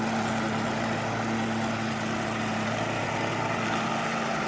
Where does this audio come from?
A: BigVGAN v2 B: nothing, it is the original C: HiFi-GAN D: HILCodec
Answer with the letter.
B